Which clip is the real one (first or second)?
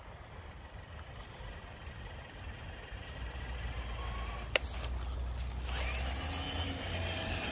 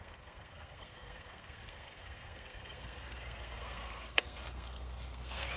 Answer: first